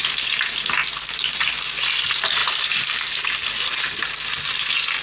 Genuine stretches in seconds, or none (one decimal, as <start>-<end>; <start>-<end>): 0.0-5.0